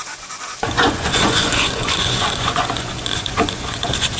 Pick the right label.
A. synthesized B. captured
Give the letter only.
A